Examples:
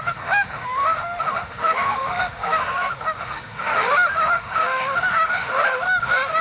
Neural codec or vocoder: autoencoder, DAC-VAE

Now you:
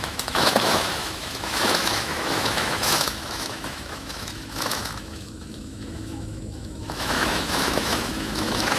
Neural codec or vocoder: autoencoder, DAC-VAE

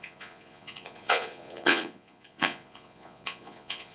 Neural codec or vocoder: vocoder, Vocos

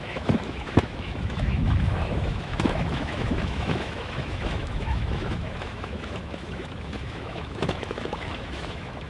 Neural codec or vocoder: autoencoder, DAC-VAE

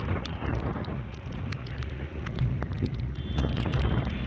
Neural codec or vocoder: vocoder, Vocos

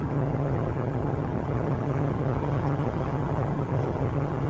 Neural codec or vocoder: vocoder, HiFi-GAN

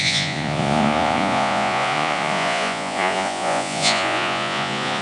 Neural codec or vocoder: vocoder, Vocos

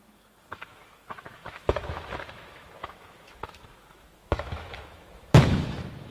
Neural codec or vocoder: autoencoder, DAC-VAE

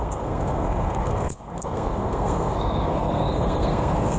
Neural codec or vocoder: codec, SNAC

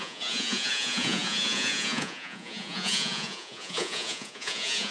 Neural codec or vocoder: vocoder, Vocos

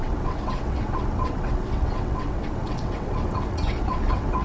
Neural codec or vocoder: vocoder, WaveNeXt